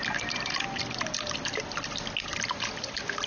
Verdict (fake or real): real